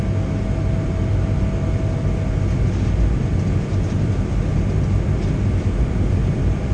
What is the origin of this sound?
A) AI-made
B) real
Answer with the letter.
B